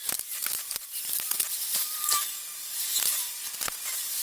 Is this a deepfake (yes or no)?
no